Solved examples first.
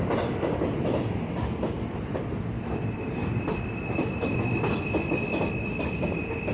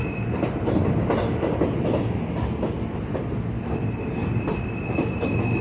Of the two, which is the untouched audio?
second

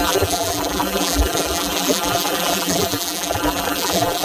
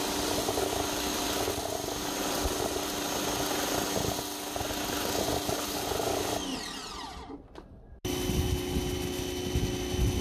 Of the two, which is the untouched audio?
second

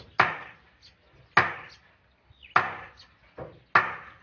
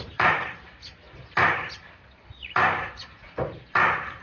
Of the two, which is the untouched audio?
first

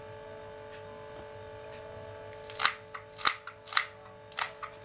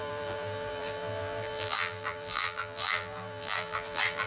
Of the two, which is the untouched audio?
first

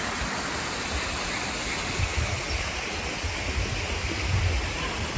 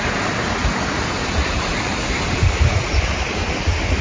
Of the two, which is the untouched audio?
first